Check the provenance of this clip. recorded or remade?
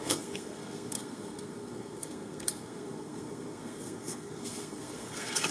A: remade